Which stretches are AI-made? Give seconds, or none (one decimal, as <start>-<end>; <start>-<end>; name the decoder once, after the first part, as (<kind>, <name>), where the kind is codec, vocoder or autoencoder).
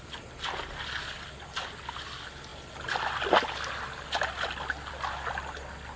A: none